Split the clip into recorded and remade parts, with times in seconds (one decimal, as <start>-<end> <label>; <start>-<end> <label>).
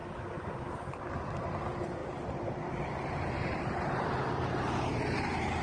0.0-2.0 recorded; 2.0-5.6 remade